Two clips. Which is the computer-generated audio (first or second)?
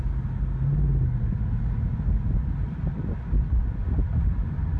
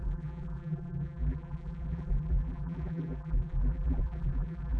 second